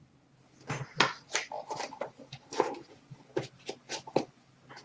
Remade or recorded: recorded